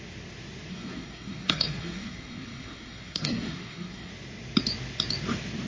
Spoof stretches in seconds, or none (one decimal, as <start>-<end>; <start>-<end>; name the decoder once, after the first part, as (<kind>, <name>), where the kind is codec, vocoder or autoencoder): 0.7-4.1 (codec, SNAC)